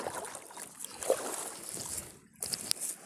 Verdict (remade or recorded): recorded